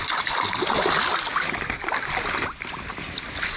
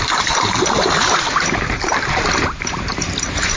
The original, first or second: first